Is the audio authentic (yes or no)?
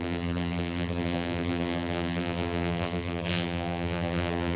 no